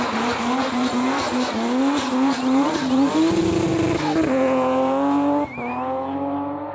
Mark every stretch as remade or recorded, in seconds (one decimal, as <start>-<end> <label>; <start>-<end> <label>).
0.0-2.3 recorded; 2.3-3.1 remade; 3.1-6.7 recorded